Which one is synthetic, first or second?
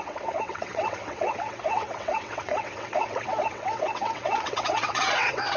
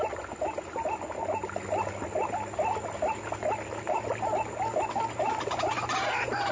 first